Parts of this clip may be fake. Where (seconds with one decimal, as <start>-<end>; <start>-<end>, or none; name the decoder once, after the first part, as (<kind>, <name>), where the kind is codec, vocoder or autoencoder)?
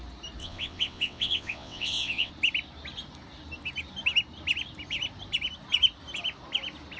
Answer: 0.4-2.3 (vocoder, WaveNeXt)